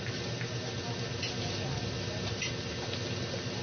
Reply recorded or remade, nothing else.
recorded